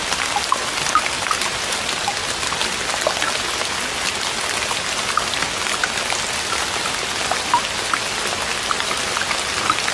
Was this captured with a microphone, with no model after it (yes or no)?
yes